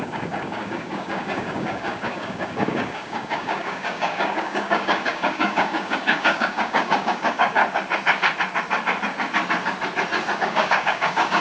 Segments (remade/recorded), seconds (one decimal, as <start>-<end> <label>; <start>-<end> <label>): 0.0-7.6 remade; 7.6-10.4 recorded; 10.4-11.4 remade